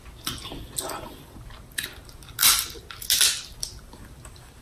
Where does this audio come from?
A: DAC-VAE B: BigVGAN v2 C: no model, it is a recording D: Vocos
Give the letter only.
C